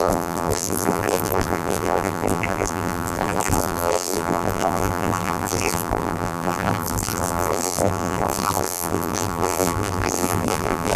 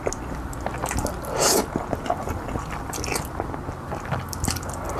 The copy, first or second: first